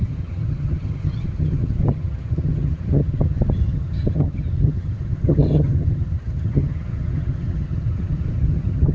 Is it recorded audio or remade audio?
remade